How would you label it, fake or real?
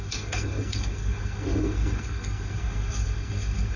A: fake